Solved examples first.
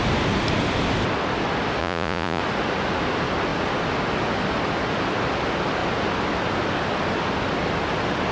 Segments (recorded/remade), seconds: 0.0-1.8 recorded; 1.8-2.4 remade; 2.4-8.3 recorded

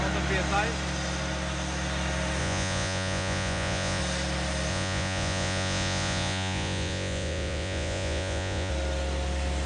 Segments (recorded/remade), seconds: 0.0-2.4 recorded; 2.4-4.0 remade; 4.0-4.7 recorded; 4.7-8.7 remade; 8.7-9.7 recorded

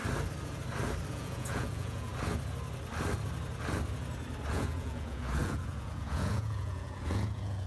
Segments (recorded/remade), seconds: 0.0-1.1 recorded; 1.1-2.1 remade; 2.1-4.5 recorded; 4.5-7.7 remade

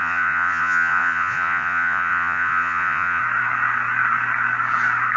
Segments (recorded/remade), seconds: 0.0-3.2 remade; 3.2-5.2 recorded

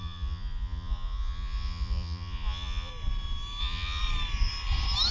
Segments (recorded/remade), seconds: 0.0-2.9 remade; 2.9-3.6 recorded; 3.6-4.0 remade; 4.0-5.1 recorded

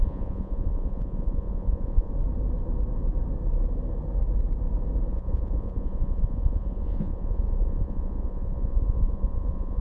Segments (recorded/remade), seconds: 0.0-2.1 remade; 2.1-5.1 recorded; 5.1-9.8 remade